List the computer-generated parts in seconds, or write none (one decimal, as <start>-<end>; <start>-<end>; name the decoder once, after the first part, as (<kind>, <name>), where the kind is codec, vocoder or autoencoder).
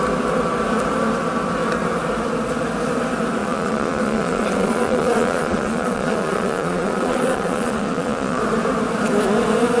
3.4-8.4 (vocoder, Vocos)